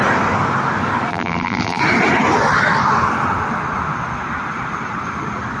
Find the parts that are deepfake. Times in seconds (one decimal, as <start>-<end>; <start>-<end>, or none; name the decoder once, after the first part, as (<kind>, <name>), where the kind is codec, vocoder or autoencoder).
1.1-1.8 (vocoder, BigVGAN v2)

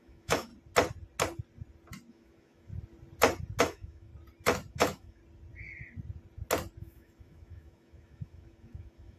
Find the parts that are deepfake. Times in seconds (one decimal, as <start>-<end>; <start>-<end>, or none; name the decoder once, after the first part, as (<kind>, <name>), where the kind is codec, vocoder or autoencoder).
0.0-0.5 (autoencoder, DAC-VAE); 2.1-2.7; 3.6-4.1; 4.7-5.2; 6.8-9.2

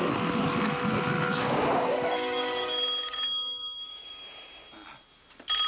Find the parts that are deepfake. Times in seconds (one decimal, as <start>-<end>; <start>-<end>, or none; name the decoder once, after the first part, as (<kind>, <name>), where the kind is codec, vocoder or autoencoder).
1.3-4.1 (codec, DAC)

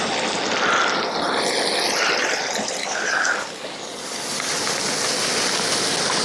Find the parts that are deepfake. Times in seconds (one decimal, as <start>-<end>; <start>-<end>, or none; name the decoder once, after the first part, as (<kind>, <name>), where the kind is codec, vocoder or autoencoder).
2.8-4.5 (codec, DAC)

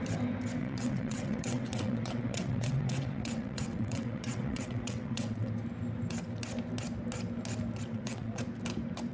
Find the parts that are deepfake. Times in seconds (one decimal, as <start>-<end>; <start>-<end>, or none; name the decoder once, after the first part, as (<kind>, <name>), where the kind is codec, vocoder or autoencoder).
0.6-5.5 (vocoder, WaveNeXt); 7.9-8.4

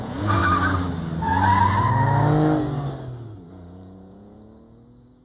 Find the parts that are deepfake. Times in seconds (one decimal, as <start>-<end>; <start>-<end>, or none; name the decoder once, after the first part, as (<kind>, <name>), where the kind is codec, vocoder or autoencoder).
0.0-0.4 (vocoder, Vocos); 3.5-5.2

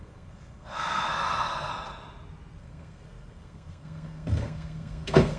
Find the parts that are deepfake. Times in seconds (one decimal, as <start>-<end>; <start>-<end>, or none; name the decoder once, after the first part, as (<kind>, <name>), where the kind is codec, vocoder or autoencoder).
0.0-1.7 (codec, SNAC); 2.6-5.4

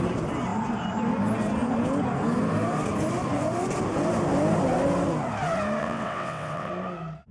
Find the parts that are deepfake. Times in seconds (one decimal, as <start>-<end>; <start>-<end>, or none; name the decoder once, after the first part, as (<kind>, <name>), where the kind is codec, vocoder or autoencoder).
5.8-6.7 (vocoder, WaveNeXt)